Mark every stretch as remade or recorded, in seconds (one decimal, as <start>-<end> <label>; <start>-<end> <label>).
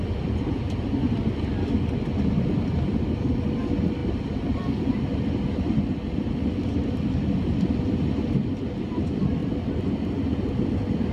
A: 0.0-11.1 recorded